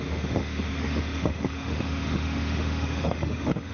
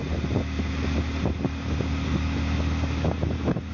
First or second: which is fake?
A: first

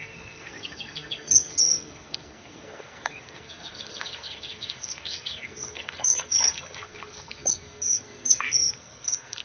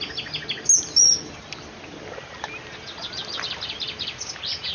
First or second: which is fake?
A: first